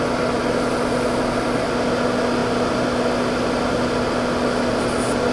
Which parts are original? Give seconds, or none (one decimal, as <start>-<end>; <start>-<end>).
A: 0.0-5.3